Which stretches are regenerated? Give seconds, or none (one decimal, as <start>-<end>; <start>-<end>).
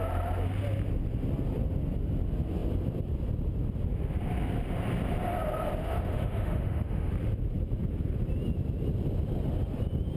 5.8-7.1